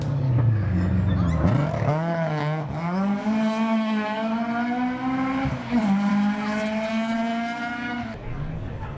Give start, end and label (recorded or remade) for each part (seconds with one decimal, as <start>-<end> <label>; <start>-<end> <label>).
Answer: 0.0-0.9 remade; 0.9-1.7 recorded; 1.7-4.3 remade; 4.3-5.5 recorded; 5.5-6.1 remade; 6.1-6.9 recorded; 6.9-9.0 remade